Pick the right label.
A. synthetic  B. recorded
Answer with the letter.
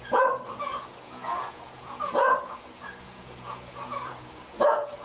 A